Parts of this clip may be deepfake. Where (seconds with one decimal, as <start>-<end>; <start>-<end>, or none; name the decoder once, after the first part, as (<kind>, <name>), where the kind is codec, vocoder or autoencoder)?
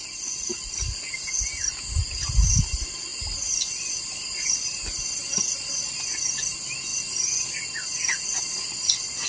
none